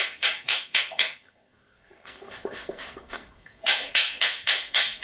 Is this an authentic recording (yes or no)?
no